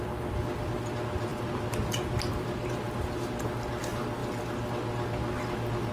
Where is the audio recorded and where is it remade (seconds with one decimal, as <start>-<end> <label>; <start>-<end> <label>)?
0.0-5.9 recorded

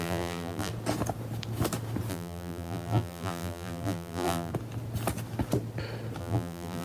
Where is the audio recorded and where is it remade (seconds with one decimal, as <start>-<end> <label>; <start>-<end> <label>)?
0.0-0.7 remade; 0.7-2.1 recorded; 2.1-4.5 remade; 4.5-6.2 recorded; 6.2-6.8 remade

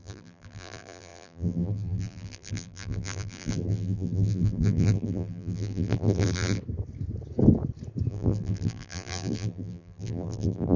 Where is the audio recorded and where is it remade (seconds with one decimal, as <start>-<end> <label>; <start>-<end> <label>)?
0.0-6.6 remade; 6.6-8.1 recorded; 8.1-10.8 remade

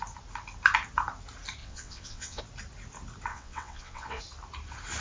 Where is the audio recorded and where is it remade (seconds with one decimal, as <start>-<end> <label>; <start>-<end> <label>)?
0.0-1.6 recorded; 1.6-2.4 remade; 2.4-3.3 recorded; 3.3-4.2 remade; 4.2-5.0 recorded

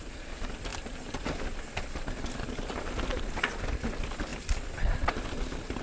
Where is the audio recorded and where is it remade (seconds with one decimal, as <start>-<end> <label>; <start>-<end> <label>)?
0.0-5.8 recorded